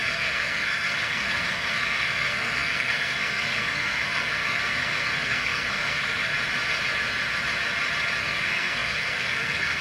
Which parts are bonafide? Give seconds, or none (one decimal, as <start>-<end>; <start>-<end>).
6.3-8.2